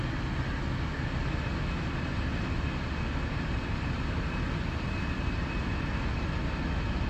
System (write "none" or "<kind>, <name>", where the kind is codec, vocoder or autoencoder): none